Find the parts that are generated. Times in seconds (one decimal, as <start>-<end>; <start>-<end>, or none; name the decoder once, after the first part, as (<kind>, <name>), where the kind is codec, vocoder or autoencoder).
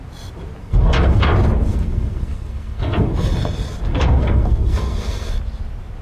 0.6-1.2 (codec, SNAC); 1.7-3.1; 3.9-5.3